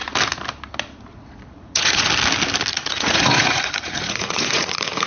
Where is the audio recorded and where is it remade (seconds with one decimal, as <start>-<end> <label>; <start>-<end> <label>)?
0.0-1.1 recorded; 1.1-2.1 remade; 2.1-2.7 recorded; 2.7-5.1 remade